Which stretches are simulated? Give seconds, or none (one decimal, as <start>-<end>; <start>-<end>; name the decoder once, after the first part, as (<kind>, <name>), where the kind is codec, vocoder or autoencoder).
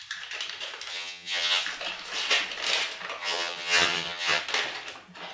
0.9-1.6 (vocoder, HiFi-GAN); 3.2-4.4